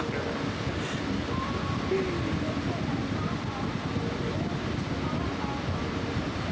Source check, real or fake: real